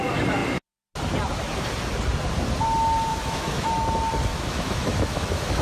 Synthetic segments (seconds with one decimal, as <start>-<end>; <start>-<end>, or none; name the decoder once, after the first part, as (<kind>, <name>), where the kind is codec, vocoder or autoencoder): 3.1-3.7 (autoencoder, DAC-VAE); 4.3-5.6